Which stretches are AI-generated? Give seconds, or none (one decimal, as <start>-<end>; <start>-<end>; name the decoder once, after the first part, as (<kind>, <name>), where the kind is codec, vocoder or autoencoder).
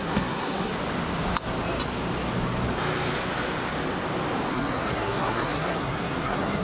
0.0-0.7 (codec, SNAC); 4.5-6.6